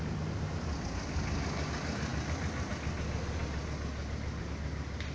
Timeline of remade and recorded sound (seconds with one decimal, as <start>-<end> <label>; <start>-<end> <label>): 0.0-5.1 recorded